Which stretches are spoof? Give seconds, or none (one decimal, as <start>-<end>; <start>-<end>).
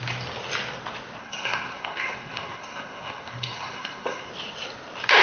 1.2-4.3